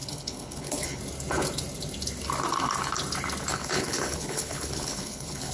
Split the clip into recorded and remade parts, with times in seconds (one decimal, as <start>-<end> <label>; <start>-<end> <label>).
0.0-1.0 remade; 1.0-3.5 recorded; 3.5-5.5 remade